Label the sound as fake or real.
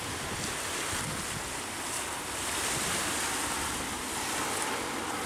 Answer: real